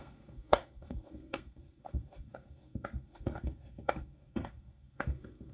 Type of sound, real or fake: fake